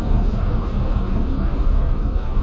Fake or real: fake